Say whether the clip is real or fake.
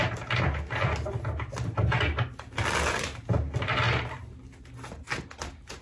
real